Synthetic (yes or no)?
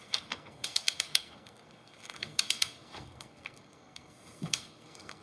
yes